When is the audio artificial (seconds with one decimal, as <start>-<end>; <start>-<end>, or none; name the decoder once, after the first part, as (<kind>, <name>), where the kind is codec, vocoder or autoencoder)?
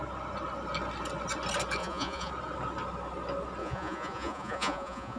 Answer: 1.8-2.3 (vocoder, Vocos); 3.6-5.2